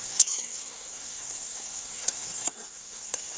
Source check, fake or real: fake